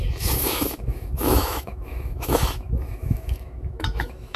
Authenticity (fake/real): fake